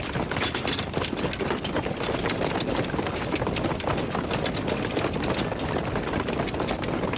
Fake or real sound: real